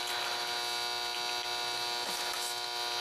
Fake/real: real